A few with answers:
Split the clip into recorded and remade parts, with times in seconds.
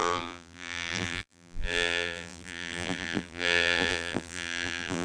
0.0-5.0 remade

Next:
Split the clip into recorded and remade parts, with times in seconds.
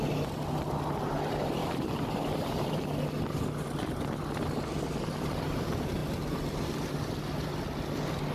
0.0-1.6 recorded; 1.6-2.7 remade; 2.7-8.3 recorded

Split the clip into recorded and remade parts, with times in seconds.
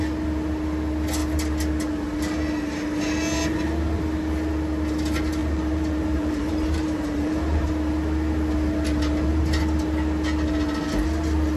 0.0-5.4 recorded; 5.4-7.7 remade; 7.7-11.6 recorded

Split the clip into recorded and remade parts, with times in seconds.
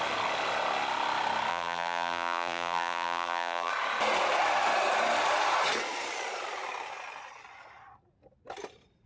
0.0-1.5 recorded; 1.5-3.7 remade; 3.7-9.1 recorded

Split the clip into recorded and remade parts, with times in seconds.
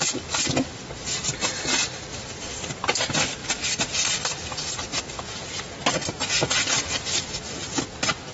0.0-2.1 recorded; 2.1-3.0 remade; 3.0-8.3 recorded